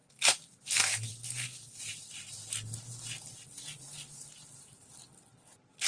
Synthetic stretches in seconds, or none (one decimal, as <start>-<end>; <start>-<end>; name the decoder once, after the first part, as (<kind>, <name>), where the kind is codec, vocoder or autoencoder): none